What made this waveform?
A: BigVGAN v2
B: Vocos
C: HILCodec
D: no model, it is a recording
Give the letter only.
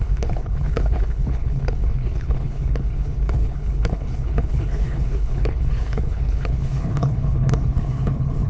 C